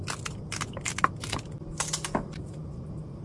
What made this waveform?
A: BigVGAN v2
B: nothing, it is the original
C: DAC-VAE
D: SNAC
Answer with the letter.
B